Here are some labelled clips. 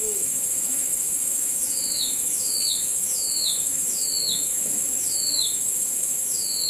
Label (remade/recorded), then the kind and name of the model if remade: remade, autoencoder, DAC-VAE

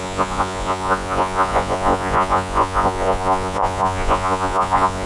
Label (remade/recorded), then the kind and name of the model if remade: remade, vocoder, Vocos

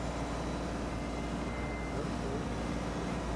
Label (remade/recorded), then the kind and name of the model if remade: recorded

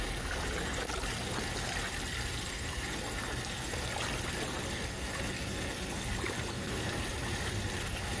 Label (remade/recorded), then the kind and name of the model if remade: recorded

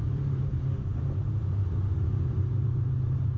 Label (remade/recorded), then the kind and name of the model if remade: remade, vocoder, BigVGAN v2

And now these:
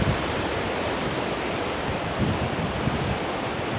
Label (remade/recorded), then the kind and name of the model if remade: remade, vocoder, BigVGAN v2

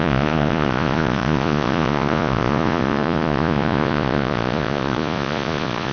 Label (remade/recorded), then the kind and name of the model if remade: remade, vocoder, Vocos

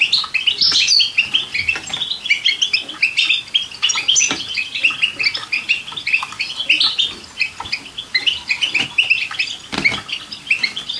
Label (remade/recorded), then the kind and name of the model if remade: recorded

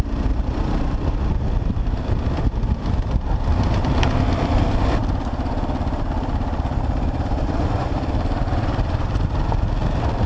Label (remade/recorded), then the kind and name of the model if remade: remade, vocoder, BigVGAN v2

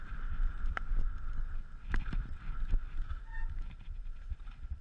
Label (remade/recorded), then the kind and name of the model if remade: recorded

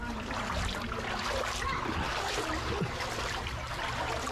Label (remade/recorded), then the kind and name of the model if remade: recorded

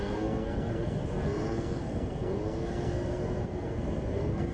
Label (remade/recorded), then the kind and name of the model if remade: remade, codec, SNAC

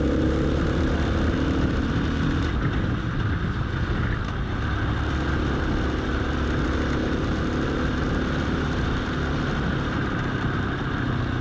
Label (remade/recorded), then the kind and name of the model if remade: recorded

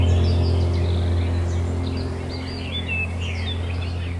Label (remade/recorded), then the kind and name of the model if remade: recorded